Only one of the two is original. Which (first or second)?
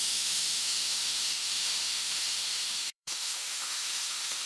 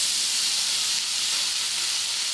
second